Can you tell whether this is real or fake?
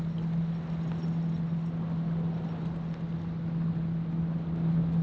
real